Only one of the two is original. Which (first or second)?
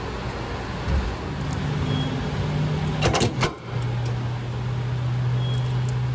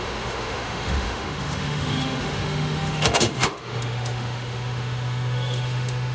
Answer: first